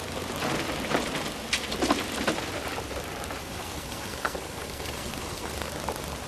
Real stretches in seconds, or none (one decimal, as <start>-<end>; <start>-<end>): 0.0-3.4; 5.7-6.3